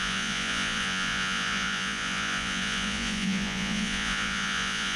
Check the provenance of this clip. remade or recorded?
remade